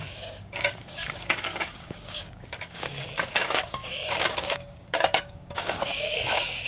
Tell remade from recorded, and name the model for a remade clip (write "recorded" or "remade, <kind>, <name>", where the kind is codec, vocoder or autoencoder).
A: remade, codec, DAC